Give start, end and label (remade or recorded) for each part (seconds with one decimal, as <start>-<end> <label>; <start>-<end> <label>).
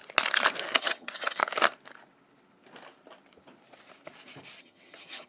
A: 0.0-0.8 recorded; 0.8-1.4 remade; 1.4-4.6 recorded; 4.6-5.3 remade